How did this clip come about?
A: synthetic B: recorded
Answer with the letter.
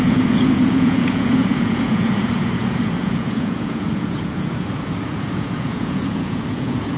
A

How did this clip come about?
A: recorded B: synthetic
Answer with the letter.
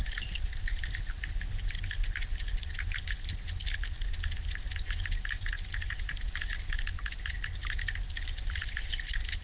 A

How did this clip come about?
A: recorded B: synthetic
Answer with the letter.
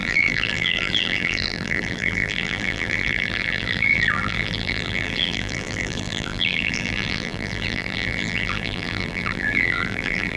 B